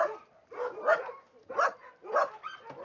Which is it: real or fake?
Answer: real